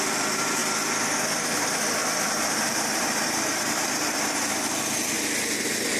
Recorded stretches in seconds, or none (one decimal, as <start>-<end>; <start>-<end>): 0.0-2.0; 4.3-6.0